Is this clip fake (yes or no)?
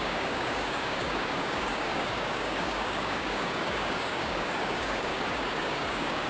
yes